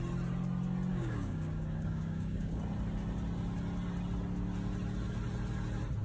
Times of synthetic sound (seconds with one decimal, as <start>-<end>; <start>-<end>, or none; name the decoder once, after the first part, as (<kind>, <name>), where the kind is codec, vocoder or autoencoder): 0.9-2.6 (codec, DAC)

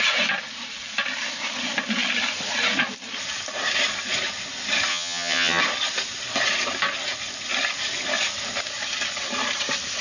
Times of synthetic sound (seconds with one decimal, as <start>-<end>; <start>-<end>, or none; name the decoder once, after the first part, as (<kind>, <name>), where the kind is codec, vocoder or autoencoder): 4.9-5.6 (vocoder, HiFi-GAN)

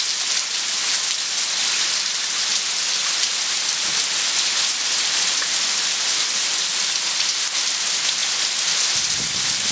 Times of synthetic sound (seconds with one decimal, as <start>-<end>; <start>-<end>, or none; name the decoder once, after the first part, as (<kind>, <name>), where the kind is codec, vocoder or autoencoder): none

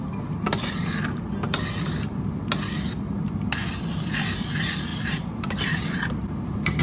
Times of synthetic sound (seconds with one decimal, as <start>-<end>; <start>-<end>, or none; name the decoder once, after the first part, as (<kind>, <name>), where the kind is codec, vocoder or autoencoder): 4.9-6.8 (vocoder, BigVGAN v2)

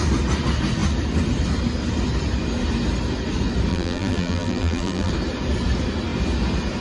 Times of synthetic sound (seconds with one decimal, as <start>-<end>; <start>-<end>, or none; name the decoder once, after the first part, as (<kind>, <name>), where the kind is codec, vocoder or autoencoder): 3.7-5.1 (vocoder, BigVGAN v2)